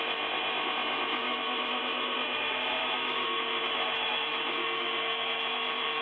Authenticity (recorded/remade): remade